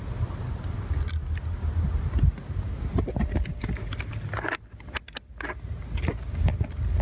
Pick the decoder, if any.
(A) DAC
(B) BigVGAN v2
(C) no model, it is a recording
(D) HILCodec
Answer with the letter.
C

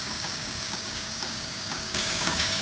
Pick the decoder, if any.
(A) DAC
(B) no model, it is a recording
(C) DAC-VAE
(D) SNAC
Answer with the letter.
A